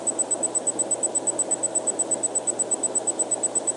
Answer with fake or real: real